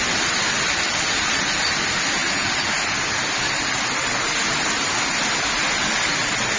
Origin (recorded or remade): recorded